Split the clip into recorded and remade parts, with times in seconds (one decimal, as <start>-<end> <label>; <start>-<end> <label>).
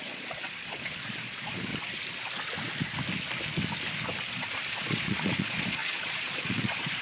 0.0-1.7 remade; 1.7-4.3 recorded; 4.3-7.0 remade